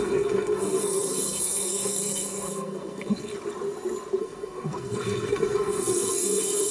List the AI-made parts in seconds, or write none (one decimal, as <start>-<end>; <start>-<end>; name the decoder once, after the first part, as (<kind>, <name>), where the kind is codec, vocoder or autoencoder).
0.0-3.3 (codec, SNAC); 4.2-6.7

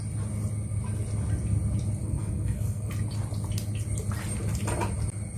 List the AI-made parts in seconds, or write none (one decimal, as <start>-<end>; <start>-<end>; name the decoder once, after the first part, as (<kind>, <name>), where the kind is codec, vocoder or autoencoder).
2.0-2.9 (codec, SNAC)